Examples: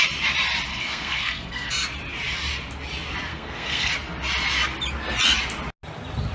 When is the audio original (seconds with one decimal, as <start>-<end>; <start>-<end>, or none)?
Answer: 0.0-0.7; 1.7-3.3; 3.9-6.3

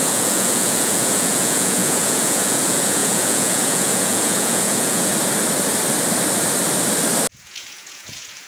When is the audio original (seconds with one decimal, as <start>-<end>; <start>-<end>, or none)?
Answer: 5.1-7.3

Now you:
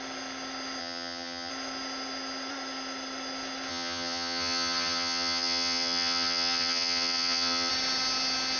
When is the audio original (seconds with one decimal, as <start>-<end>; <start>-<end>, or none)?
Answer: 0.0-0.8; 1.5-3.7; 7.7-8.6

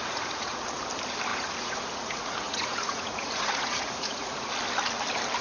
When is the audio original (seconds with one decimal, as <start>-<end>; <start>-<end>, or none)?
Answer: 0.8-1.3; 4.5-5.4

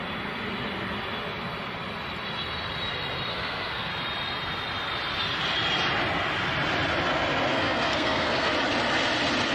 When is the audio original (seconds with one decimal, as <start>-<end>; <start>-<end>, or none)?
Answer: 0.0-3.3; 3.9-7.5; 8.5-9.5

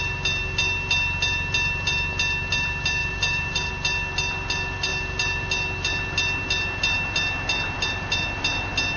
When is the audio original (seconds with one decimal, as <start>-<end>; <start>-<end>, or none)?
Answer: 0.0-3.0; 3.7-9.0

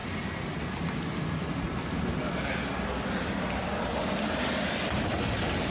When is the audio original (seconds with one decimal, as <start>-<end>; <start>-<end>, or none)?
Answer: 0.0-5.7

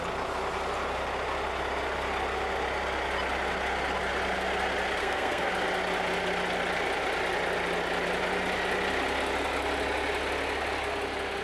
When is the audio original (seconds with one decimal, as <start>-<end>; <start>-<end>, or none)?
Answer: 0.0-5.0; 5.5-11.4